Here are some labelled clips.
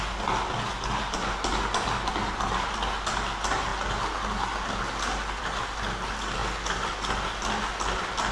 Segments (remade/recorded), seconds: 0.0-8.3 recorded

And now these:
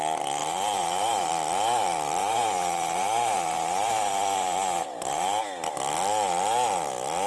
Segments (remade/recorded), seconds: 0.0-0.4 recorded; 0.4-1.3 remade; 1.3-2.2 recorded; 2.2-5.4 remade; 5.4-7.3 recorded

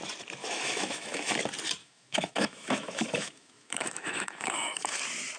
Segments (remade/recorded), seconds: 0.0-0.4 recorded; 0.4-1.3 remade; 1.3-1.8 recorded; 1.8-5.0 remade; 5.0-5.4 recorded

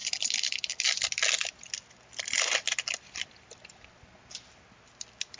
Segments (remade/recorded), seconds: 0.0-5.4 recorded

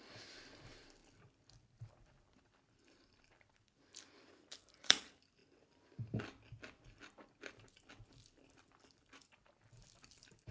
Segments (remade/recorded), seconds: 0.0-1.0 remade; 1.0-1.9 recorded; 1.9-5.4 remade; 5.4-7.7 recorded; 7.7-10.5 remade

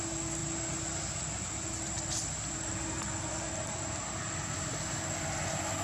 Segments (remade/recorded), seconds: 0.0-5.8 recorded

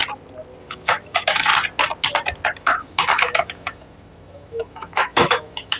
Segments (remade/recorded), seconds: 0.0-0.6 recorded; 0.6-1.5 remade; 1.5-2.6 recorded; 2.6-5.8 remade

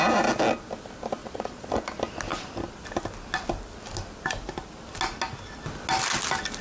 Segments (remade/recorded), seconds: 0.0-1.2 recorded; 1.2-1.7 remade; 1.7-6.6 recorded